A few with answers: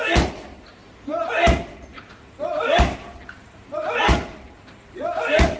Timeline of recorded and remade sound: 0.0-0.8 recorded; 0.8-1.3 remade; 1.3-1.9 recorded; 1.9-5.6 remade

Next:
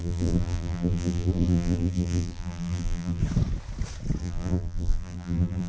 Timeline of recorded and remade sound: 0.0-3.2 remade; 3.2-4.2 recorded; 4.2-5.7 remade

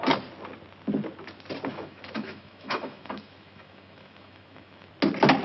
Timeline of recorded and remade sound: 0.0-1.7 recorded; 1.7-4.9 remade; 4.9-5.4 recorded